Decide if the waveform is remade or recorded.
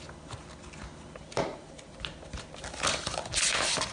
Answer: recorded